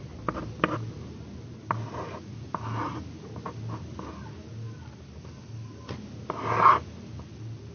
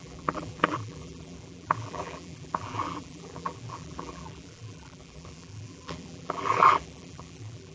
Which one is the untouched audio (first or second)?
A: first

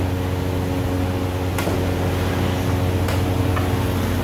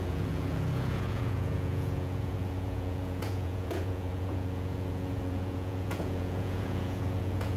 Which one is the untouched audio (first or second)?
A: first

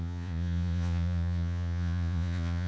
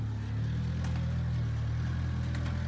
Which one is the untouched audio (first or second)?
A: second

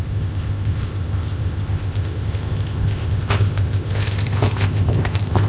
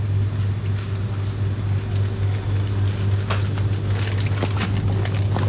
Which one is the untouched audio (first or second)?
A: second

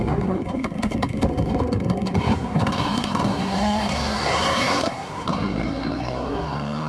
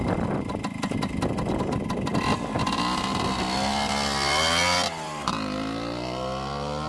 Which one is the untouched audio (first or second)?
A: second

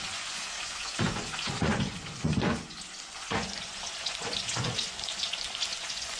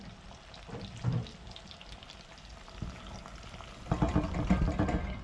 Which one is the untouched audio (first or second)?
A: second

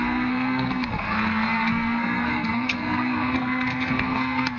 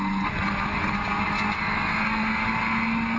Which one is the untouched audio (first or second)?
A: second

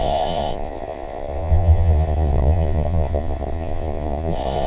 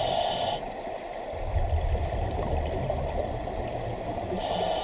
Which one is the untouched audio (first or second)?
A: second